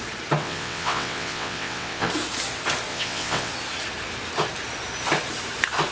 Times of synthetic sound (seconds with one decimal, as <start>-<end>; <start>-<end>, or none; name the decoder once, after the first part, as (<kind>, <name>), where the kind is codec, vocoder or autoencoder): 0.4-2.1 (vocoder, WaveNeXt); 2.9-3.5